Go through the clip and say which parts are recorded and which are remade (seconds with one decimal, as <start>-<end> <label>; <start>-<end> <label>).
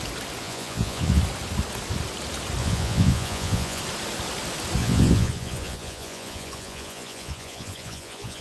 0.0-0.4 recorded; 0.4-1.2 remade; 1.2-2.6 recorded; 2.6-3.8 remade; 3.8-4.8 recorded; 4.8-8.4 remade